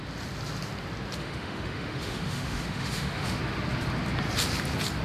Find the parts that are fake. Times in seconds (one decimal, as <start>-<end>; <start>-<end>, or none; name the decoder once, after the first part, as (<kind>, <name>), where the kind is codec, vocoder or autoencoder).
1.2-3.4 (autoencoder, DAC-VAE)